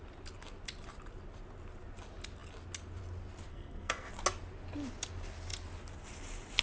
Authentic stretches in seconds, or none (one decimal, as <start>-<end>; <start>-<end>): 0.0-3.5; 4.1-6.6